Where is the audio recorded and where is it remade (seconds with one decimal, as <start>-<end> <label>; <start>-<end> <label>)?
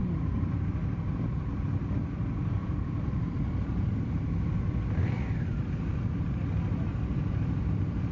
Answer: 0.0-1.8 remade; 1.8-2.6 recorded; 2.6-3.2 remade; 3.2-8.1 recorded